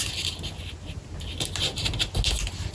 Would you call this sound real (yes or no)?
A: yes